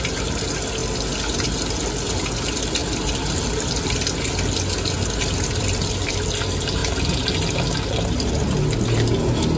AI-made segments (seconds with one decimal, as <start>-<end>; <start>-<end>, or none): none